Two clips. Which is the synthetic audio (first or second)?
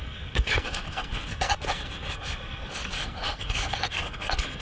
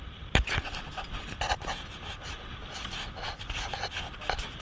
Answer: first